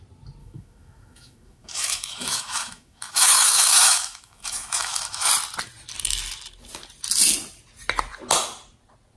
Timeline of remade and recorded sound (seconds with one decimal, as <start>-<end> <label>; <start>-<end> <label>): 0.0-0.4 recorded; 0.4-5.3 remade; 5.3-9.2 recorded